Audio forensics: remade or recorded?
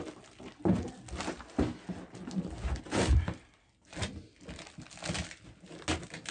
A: recorded